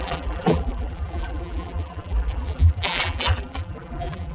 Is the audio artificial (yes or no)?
yes